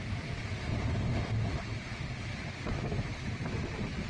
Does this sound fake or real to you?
real